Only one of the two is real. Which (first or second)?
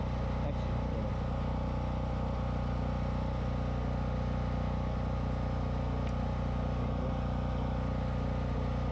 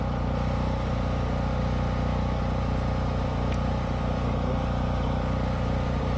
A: first